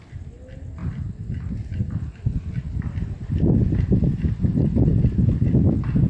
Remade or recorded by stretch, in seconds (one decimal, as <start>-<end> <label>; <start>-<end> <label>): 0.0-6.1 recorded

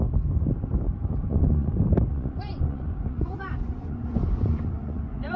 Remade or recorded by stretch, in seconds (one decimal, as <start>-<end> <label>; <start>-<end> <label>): 0.0-1.2 recorded; 1.2-1.7 remade; 1.7-2.1 recorded; 2.1-5.4 remade